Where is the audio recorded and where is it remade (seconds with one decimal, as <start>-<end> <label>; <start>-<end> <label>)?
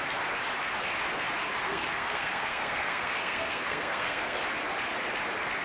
0.0-1.6 recorded; 1.6-4.4 remade; 4.4-5.6 recorded